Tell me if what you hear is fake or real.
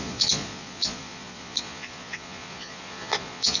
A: fake